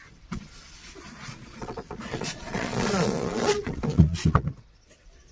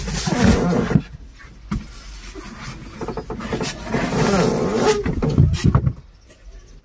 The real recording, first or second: second